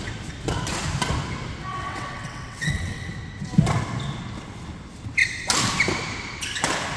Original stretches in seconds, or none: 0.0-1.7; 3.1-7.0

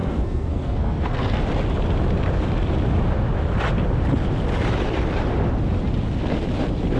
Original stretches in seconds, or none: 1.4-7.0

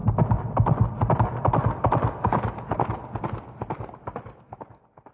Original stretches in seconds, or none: 0.0-5.1